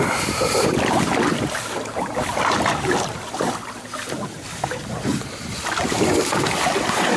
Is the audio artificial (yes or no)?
no